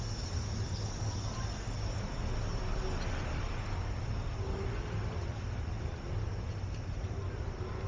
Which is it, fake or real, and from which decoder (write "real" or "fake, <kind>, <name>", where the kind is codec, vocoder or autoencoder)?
real